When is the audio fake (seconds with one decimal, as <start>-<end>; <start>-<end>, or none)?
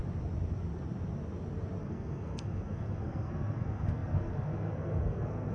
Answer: 1.8-5.5